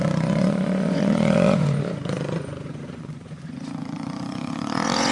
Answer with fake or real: fake